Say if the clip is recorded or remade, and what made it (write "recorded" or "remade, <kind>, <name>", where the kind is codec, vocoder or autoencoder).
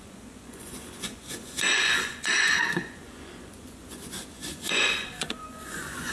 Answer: remade, vocoder, Vocos